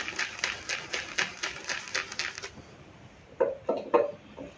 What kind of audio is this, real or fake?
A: fake